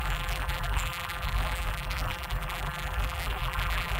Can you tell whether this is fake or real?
fake